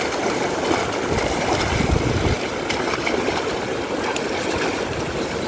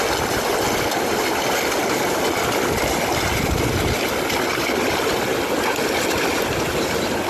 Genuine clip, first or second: second